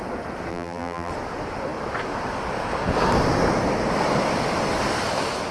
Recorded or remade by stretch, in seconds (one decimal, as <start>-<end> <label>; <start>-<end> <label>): 0.0-0.5 recorded; 0.5-1.1 remade; 1.1-5.5 recorded